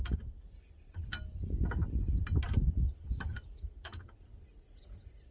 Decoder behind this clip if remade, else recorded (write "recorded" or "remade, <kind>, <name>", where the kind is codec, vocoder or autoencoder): recorded